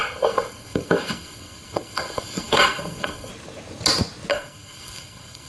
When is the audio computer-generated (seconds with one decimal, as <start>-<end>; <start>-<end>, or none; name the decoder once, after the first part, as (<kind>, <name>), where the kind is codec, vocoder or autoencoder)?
0.0-3.3 (codec, SNAC); 4.3-5.5